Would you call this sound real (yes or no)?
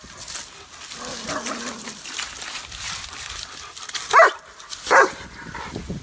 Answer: yes